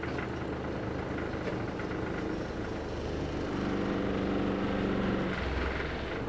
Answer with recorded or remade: recorded